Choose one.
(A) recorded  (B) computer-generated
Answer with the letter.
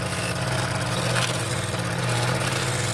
A